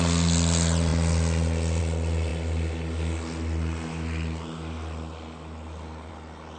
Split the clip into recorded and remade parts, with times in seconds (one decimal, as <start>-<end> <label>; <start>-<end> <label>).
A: 0.0-6.6 recorded